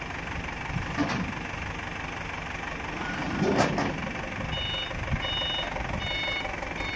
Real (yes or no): yes